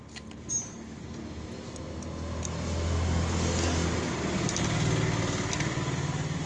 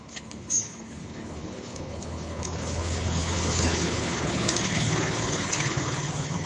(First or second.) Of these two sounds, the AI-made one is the second